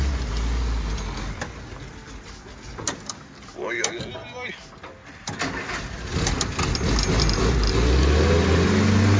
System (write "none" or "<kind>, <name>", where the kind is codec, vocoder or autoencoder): none